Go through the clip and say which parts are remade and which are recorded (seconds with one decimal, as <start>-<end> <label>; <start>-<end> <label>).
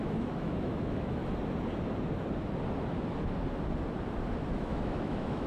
0.0-1.2 remade; 1.2-4.5 recorded; 4.5-5.5 remade